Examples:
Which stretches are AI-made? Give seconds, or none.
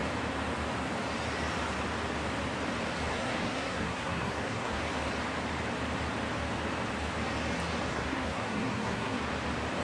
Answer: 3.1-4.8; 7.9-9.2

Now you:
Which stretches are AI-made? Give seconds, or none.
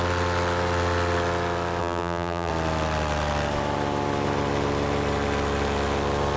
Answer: 1.8-2.5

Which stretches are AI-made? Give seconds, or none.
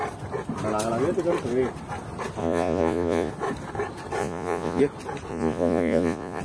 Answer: 2.4-3.3; 4.2-4.8; 5.3-6.4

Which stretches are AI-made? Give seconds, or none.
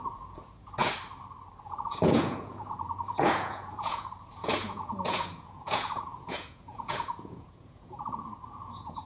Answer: 0.0-0.8; 1.6-9.1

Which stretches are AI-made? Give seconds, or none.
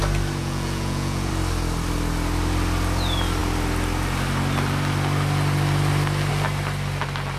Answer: 0.4-1.3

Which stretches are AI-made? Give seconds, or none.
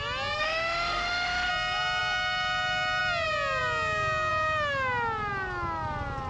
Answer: 0.4-1.5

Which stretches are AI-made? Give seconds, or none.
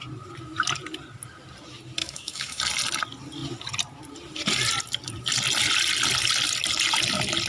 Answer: 2.0-2.6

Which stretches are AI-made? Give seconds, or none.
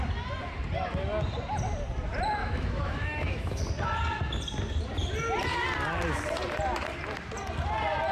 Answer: 2.4-3.6